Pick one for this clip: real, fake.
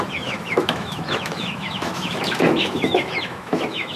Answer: fake